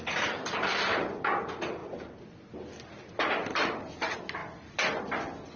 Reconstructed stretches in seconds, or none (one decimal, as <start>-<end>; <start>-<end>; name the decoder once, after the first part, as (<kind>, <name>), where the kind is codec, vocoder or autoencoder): none